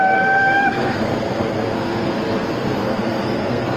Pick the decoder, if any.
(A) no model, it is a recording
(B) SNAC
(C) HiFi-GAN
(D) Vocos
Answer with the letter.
B